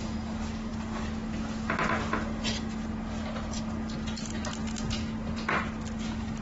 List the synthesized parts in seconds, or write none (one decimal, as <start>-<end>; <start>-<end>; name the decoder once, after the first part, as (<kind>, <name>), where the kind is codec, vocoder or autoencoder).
none

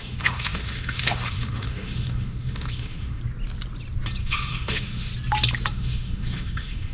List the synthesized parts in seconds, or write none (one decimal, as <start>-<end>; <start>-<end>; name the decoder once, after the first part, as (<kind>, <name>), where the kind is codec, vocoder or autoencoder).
0.0-3.2 (autoencoder, DAC-VAE); 4.2-5.1; 5.7-6.9

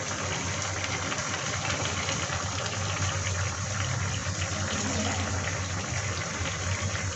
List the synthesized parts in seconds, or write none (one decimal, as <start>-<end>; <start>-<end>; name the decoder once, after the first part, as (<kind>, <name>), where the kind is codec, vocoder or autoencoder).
none

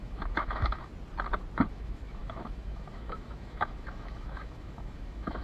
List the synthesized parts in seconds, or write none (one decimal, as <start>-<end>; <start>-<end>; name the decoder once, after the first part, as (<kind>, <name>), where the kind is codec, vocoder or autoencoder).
0.0-0.9 (autoencoder, DAC-VAE); 1.7-5.4